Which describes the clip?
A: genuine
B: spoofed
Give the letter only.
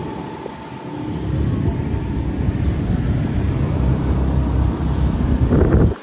A